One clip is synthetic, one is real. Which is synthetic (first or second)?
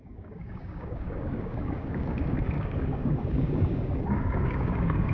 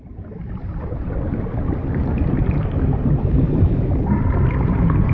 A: first